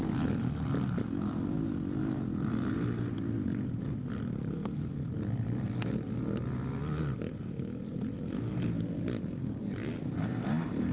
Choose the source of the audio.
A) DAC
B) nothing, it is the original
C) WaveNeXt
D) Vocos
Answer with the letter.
B